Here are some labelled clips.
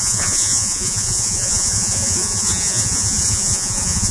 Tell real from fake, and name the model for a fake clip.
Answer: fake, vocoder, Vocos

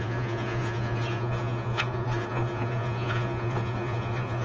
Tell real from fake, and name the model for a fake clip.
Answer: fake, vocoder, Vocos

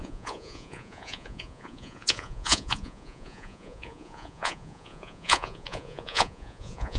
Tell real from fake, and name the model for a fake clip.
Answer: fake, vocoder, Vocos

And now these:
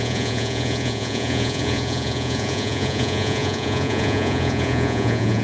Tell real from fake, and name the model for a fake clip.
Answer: fake, vocoder, Vocos